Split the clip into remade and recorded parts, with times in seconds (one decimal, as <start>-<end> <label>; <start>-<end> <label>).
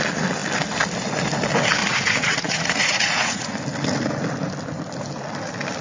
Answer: 0.0-1.8 recorded; 1.8-3.6 remade; 3.6-5.8 recorded